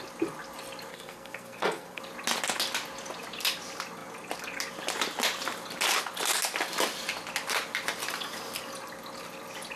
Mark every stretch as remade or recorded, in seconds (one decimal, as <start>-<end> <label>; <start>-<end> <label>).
0.0-0.9 recorded; 0.9-2.0 remade; 2.0-9.8 recorded